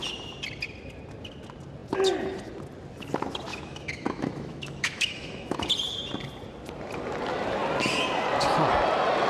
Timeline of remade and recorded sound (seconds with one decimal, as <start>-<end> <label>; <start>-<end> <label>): 0.0-3.5 recorded; 3.5-5.7 remade; 5.7-9.3 recorded